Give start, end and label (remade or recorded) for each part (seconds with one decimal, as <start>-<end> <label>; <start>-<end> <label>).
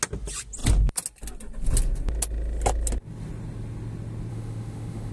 0.0-4.3 recorded; 4.3-5.1 remade